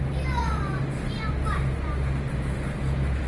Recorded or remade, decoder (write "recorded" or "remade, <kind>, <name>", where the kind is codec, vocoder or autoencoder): recorded